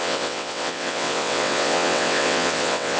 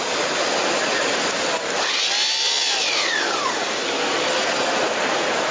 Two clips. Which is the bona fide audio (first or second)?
second